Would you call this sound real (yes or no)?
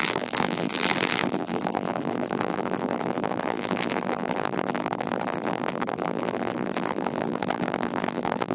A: no